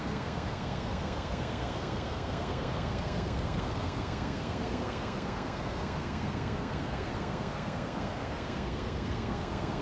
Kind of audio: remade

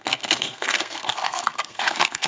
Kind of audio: remade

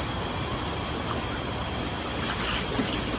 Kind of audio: recorded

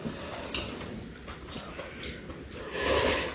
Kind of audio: recorded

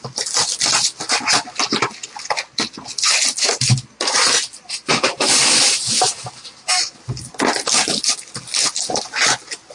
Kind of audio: recorded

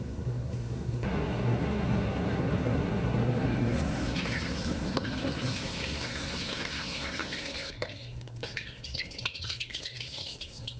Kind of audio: remade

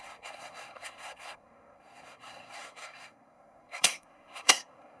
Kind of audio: remade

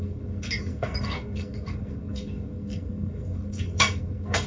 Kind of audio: remade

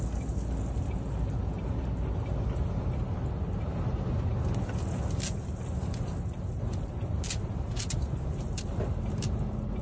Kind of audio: recorded